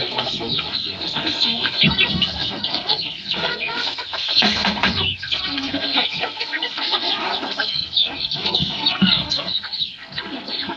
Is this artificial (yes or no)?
yes